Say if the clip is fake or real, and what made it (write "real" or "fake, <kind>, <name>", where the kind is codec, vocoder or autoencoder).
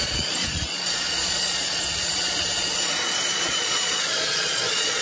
fake, vocoder, Vocos